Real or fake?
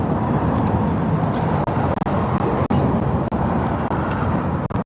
real